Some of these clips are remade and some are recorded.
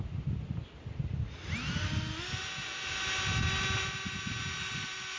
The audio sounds recorded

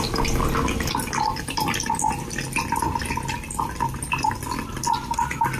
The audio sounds recorded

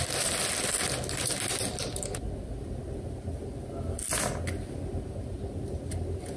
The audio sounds recorded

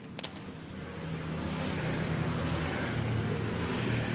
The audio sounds recorded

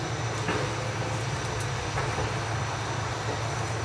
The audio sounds recorded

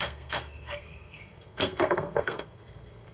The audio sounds remade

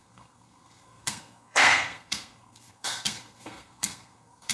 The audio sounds remade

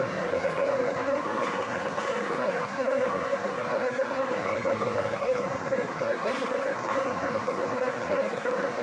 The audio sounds remade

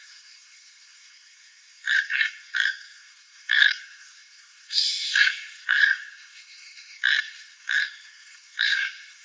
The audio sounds remade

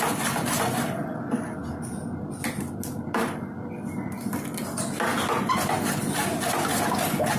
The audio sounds recorded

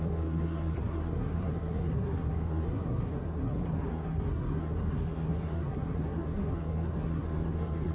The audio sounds remade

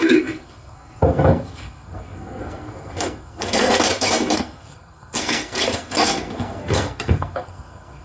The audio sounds remade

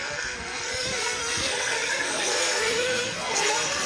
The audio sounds remade